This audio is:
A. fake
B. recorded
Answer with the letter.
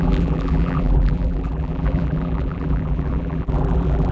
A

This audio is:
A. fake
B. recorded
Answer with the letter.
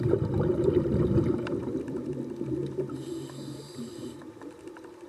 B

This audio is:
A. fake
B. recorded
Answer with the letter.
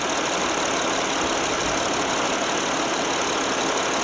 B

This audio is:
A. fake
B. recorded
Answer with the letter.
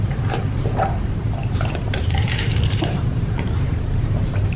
A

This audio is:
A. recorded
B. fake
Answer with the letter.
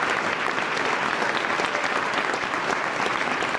A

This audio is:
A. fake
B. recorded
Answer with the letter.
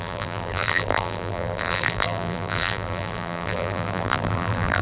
A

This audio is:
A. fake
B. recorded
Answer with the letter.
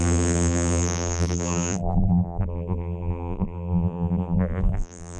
A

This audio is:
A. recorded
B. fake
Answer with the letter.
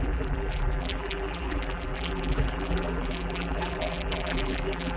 B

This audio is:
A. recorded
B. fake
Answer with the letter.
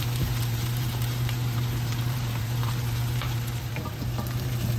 B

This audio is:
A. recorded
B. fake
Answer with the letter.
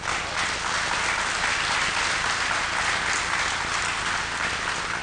A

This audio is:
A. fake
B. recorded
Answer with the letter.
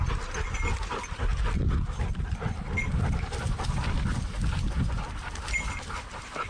B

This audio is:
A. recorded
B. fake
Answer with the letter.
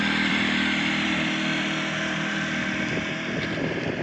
B